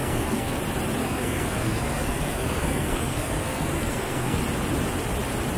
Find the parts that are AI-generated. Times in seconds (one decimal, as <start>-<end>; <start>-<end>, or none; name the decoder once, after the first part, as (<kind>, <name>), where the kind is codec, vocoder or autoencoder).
0.0-0.6 (codec, SNAC); 1.0-4.4